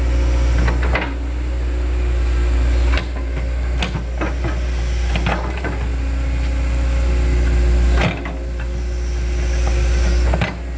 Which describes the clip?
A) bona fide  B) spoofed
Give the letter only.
A